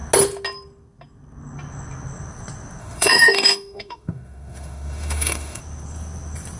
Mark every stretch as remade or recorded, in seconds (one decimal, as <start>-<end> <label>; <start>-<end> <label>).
0.0-2.8 recorded; 2.8-5.6 remade; 5.6-6.6 recorded